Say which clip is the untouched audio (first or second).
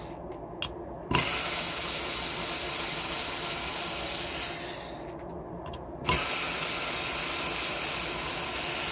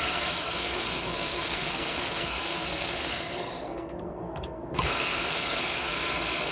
first